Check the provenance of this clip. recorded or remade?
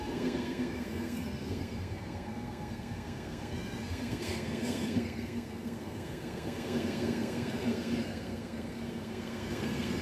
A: remade